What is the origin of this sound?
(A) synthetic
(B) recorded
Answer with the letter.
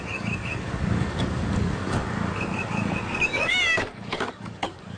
A